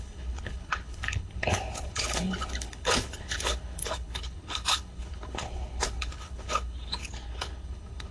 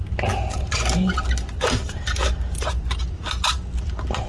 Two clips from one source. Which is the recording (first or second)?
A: second